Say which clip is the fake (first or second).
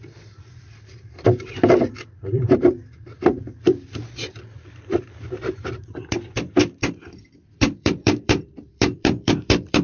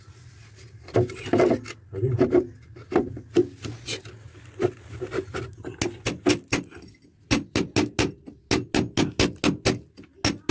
first